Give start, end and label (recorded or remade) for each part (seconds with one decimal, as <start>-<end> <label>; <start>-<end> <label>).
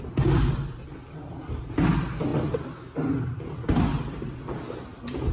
0.0-5.3 recorded